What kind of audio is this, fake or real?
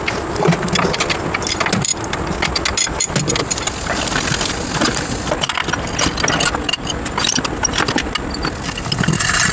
real